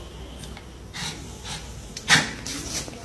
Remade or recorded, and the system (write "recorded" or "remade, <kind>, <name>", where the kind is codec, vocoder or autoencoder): remade, vocoder, BigVGAN v2